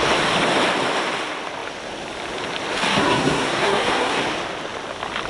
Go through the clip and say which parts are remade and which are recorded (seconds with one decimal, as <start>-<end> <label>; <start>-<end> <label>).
0.0-2.9 recorded; 2.9-4.2 remade; 4.2-5.3 recorded